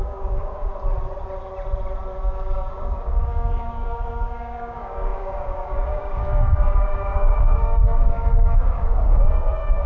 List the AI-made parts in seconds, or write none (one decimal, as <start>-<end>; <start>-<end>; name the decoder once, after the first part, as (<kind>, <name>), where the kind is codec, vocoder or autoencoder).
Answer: 0.0-0.7 (codec, DAC); 2.2-9.9